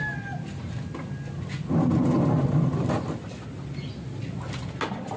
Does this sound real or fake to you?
real